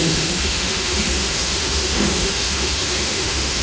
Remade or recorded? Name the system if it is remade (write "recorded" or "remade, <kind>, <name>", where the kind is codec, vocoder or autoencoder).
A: remade, autoencoder, DAC-VAE